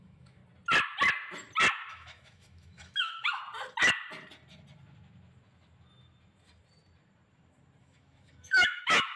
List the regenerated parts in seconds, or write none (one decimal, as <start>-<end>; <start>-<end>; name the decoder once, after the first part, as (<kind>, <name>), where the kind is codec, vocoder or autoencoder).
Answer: 0.0-0.4 (autoencoder, DAC-VAE); 1.9-3.4; 7.8-9.2